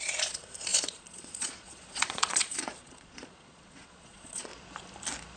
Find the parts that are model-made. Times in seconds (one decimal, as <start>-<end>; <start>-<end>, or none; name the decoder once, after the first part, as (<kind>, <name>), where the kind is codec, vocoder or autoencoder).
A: 0.0-4.5 (vocoder, Vocos)